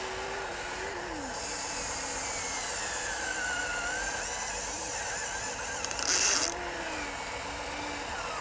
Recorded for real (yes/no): no